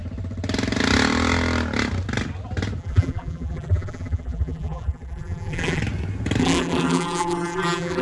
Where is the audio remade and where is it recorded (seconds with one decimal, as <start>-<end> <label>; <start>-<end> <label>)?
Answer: 0.0-2.8 recorded; 2.8-5.8 remade; 5.8-6.4 recorded; 6.4-8.0 remade